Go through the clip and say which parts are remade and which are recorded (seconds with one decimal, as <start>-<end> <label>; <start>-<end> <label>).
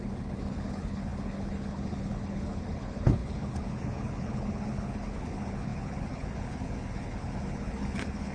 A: 0.0-8.3 remade